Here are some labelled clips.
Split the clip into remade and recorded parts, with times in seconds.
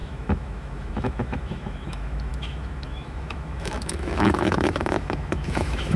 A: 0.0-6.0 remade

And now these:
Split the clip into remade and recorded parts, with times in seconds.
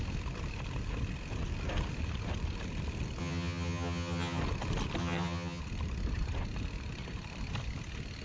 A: 0.0-3.2 recorded; 3.2-4.4 remade; 4.4-5.0 recorded; 5.0-5.6 remade; 5.6-8.2 recorded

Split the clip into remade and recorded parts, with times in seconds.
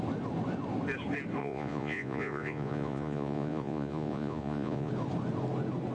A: 0.0-1.4 recorded; 1.4-4.9 remade; 4.9-5.9 recorded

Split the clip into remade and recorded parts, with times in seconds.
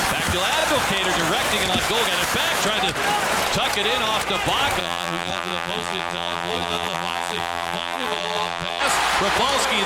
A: 0.0-4.8 recorded; 4.8-8.8 remade; 8.8-9.9 recorded